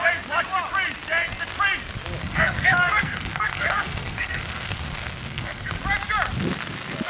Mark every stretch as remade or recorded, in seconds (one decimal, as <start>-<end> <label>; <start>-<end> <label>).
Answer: 0.0-2.2 recorded; 2.2-5.7 remade; 5.7-7.1 recorded

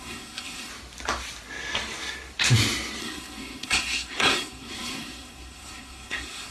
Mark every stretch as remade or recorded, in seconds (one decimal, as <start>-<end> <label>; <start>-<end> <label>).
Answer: 0.0-0.7 remade; 0.7-3.0 recorded; 3.0-6.5 remade

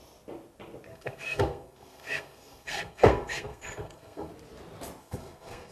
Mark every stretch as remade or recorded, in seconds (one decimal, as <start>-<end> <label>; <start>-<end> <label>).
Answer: 0.0-0.9 recorded; 0.9-4.3 remade; 4.3-5.0 recorded; 5.0-5.7 remade